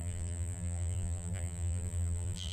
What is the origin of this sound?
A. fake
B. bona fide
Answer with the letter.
A